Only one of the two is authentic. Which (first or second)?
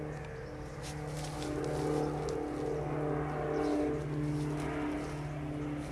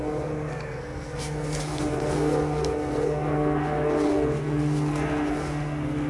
first